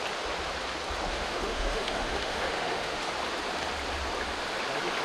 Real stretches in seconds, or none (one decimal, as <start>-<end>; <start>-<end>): 0.0-1.1; 3.1-5.0